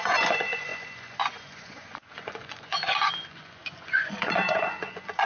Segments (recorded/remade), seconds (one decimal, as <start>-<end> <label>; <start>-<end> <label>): 0.0-5.3 remade